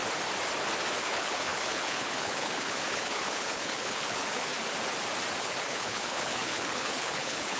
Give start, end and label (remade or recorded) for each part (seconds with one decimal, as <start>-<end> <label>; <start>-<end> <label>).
0.0-1.0 recorded; 1.0-4.5 remade; 4.5-5.4 recorded; 5.4-7.6 remade